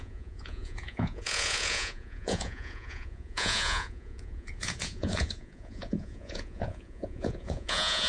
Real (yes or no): no